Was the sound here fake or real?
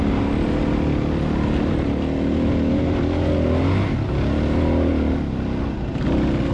real